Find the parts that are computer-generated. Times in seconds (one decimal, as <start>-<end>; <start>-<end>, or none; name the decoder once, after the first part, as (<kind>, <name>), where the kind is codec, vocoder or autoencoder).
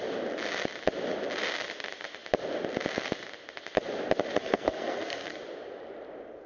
4.4-5.4 (codec, SNAC)